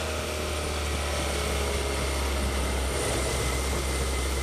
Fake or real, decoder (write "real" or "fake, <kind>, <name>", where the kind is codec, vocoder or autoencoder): real